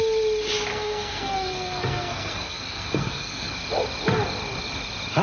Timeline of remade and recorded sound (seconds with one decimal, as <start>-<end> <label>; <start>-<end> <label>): 0.0-0.7 recorded; 0.7-3.5 remade; 3.5-5.2 recorded